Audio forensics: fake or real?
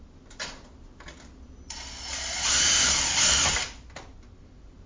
real